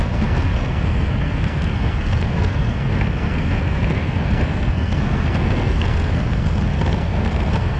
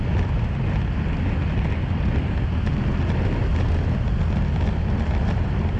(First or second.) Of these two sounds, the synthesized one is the first